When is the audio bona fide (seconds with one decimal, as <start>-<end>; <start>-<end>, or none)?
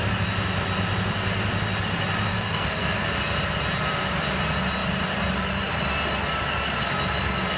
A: 0.0-2.3; 3.2-7.6